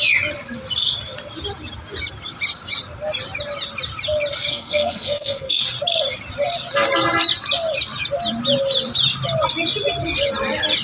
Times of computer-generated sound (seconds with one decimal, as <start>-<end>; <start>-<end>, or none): 4.5-5.6